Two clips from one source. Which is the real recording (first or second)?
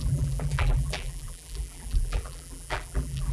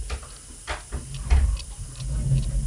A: second